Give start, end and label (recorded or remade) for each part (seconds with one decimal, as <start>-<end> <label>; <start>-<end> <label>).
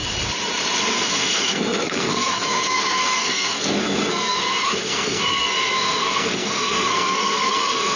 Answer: 0.0-0.9 recorded; 0.9-8.0 remade